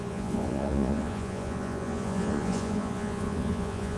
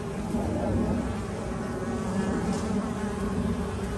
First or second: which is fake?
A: first